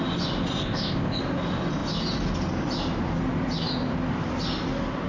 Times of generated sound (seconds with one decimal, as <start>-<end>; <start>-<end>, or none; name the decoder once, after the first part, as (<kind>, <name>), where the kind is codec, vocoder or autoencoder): 0.6-1.2 (codec, ZipCodec)